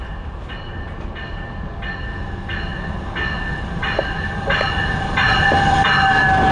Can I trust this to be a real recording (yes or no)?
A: yes